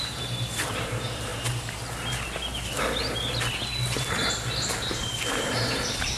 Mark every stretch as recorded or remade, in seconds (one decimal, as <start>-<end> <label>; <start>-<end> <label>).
0.0-1.3 remade; 1.3-5.0 recorded; 5.0-6.2 remade